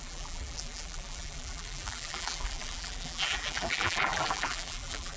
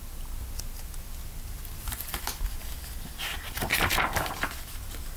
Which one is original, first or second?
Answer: second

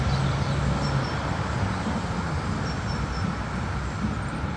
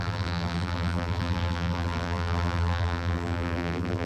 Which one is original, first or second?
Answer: first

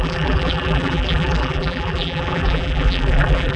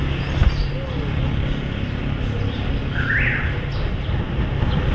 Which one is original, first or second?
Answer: second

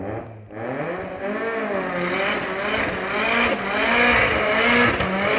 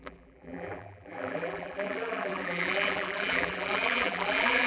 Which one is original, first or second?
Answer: first